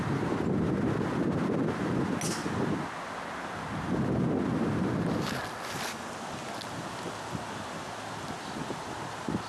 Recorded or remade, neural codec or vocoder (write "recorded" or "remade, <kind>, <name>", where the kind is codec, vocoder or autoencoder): recorded